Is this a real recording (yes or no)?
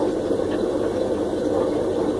yes